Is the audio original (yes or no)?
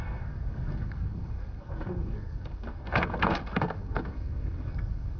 no